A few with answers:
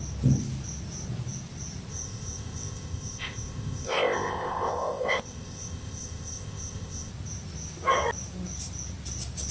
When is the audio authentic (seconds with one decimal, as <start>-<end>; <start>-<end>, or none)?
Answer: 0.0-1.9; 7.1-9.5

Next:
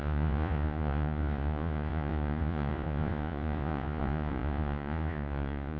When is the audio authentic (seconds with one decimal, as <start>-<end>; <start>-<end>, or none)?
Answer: none

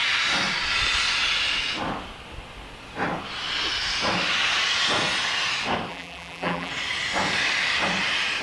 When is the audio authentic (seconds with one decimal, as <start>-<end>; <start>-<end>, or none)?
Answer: 0.0-5.9; 6.7-8.4